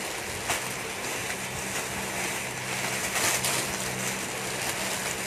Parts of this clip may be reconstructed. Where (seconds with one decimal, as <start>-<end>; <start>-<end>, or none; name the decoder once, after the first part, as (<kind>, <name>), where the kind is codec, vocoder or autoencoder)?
none